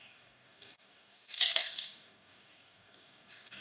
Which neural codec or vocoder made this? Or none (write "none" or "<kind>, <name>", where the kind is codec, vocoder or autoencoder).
codec, DAC